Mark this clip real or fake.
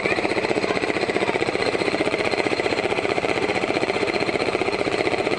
fake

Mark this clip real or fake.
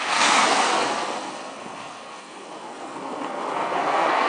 fake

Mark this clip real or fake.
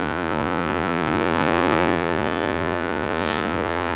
fake